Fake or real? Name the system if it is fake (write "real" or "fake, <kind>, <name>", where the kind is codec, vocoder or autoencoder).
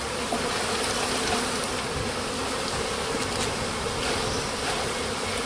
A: real